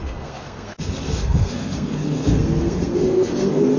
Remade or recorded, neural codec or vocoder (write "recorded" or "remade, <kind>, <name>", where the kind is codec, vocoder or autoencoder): remade, codec, SNAC